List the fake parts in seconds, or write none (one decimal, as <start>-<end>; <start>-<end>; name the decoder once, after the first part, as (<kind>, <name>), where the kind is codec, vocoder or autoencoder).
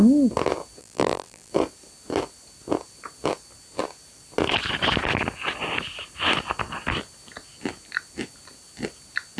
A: 0.8-1.5 (vocoder, BigVGAN v2)